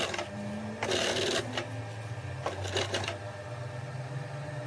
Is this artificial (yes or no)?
no